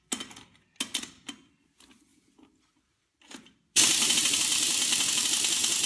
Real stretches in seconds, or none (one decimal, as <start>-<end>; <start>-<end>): 0.0-5.9